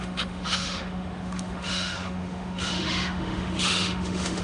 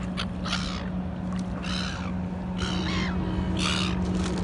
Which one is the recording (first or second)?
second